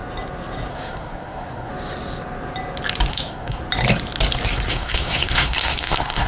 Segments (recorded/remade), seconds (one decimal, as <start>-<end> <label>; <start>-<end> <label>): 0.0-0.7 recorded; 0.7-1.7 remade; 1.7-3.1 recorded; 3.1-3.6 remade; 3.6-4.7 recorded; 4.7-6.3 remade